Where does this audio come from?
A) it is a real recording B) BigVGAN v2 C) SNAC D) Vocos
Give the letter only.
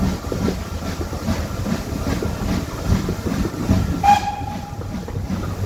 A